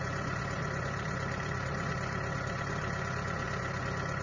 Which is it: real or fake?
fake